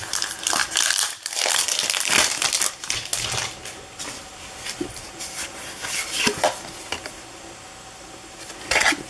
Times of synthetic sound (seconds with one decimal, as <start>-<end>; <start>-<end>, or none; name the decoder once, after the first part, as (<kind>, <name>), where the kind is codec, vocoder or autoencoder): none